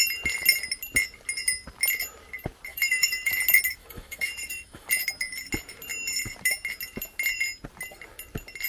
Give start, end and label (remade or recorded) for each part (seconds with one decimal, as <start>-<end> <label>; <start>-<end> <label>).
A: 0.0-2.7 recorded; 2.7-3.3 remade; 3.3-3.8 recorded; 3.8-4.9 remade; 4.9-8.7 recorded

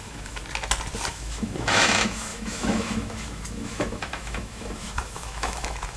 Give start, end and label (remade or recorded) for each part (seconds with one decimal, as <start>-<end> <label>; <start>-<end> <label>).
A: 0.0-0.4 remade; 0.4-1.1 recorded; 1.1-6.0 remade